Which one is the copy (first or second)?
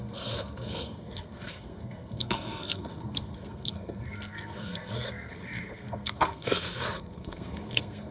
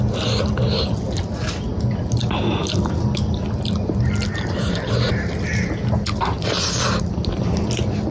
first